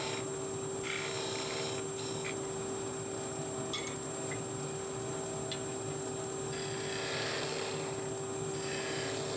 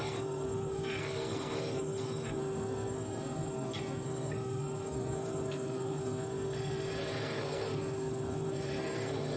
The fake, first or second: second